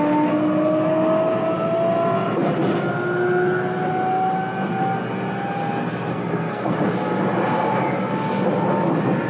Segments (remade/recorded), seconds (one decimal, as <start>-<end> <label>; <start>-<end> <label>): 0.0-6.1 recorded; 6.1-6.8 remade; 6.8-9.3 recorded